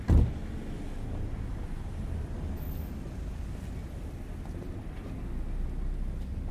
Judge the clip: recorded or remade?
recorded